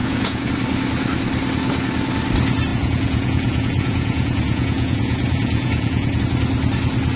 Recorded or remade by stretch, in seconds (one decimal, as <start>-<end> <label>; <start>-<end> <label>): 0.0-0.5 remade; 0.5-2.7 recorded; 2.7-6.2 remade; 6.2-7.2 recorded